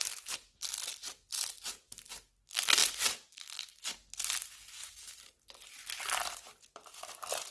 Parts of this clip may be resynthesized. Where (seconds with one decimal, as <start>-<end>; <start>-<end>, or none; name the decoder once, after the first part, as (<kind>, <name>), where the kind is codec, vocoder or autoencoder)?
none